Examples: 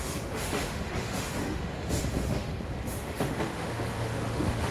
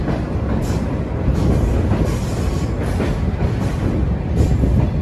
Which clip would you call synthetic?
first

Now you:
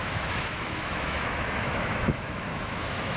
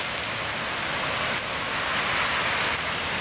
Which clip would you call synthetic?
first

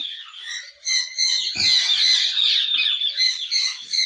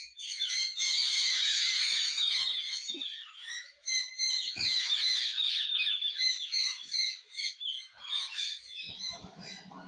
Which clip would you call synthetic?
second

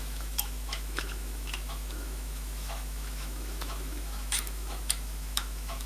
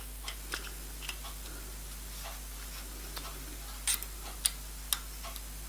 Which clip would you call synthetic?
first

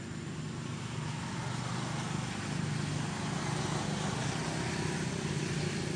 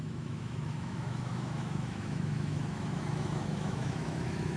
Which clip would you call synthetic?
second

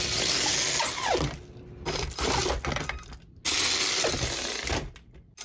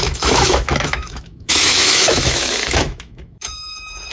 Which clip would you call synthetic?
second